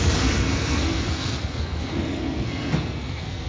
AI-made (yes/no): yes